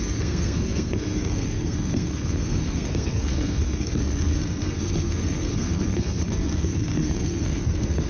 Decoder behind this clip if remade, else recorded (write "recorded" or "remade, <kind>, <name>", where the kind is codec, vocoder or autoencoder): remade, codec, SNAC